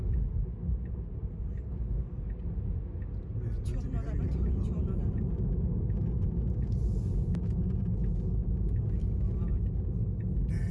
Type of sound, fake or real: real